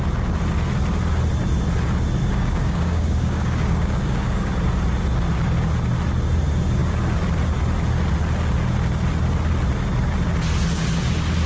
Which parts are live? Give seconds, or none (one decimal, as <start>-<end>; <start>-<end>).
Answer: 0.0-2.2; 4.5-11.5